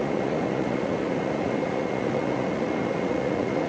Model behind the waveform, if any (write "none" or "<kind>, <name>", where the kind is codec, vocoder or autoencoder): vocoder, Vocos